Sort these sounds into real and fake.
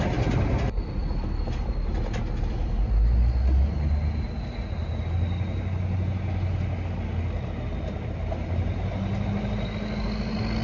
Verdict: real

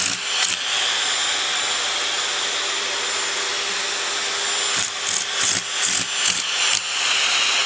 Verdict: real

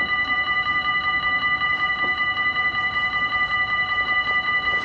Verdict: fake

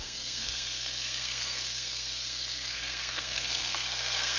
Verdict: fake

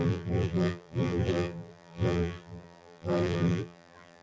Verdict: fake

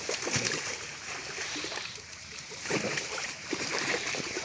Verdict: fake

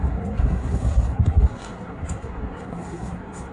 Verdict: fake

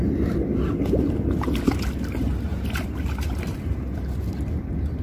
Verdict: real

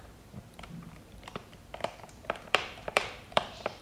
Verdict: fake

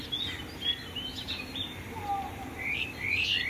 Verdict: real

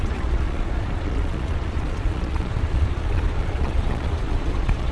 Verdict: fake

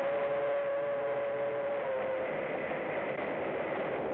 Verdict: real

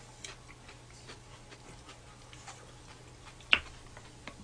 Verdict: real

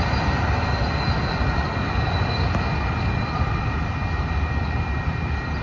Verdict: fake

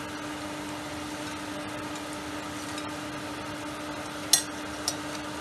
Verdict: real